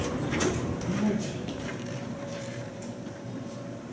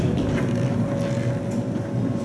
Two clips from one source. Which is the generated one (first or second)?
first